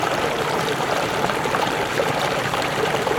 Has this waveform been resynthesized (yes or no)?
yes